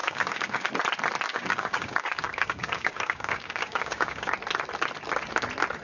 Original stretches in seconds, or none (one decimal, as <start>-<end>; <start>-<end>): 0.7-1.3; 4.3-5.8